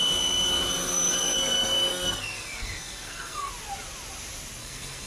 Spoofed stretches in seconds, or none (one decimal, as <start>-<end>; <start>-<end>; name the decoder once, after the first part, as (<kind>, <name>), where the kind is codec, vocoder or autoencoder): 0.9-3.5 (codec, SNAC); 4.6-5.1